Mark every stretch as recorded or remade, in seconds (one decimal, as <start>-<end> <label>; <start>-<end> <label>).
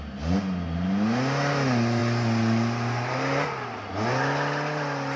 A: 0.0-5.2 recorded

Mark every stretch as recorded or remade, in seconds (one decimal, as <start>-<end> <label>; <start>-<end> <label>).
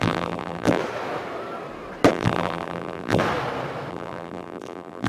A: 0.0-0.8 remade; 0.8-2.1 recorded; 2.1-3.2 remade; 3.2-3.9 recorded; 3.9-5.1 remade